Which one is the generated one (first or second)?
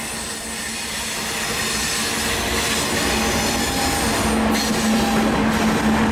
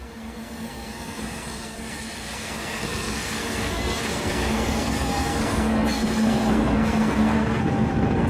second